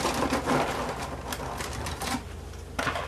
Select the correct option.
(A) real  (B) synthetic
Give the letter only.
A